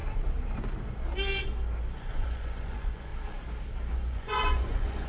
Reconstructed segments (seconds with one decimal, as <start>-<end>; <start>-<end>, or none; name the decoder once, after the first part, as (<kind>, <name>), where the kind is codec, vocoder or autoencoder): 2.0-3.1 (vocoder, Vocos); 3.9-5.1